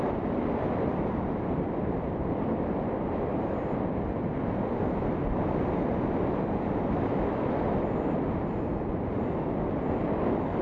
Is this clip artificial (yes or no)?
no